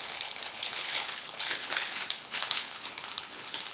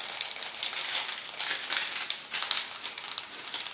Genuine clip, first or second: second